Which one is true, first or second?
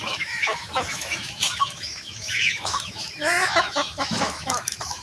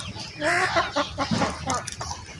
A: second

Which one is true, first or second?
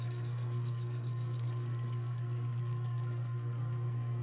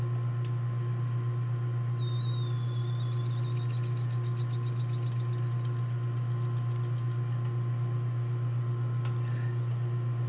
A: second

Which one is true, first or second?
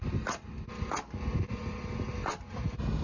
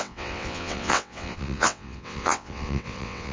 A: first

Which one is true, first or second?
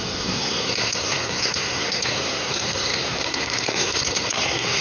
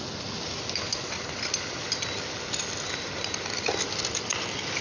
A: second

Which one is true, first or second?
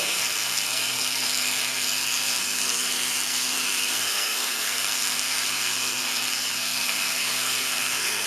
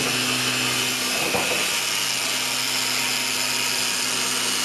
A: second